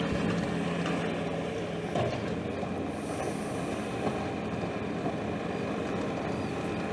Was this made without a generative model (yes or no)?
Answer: yes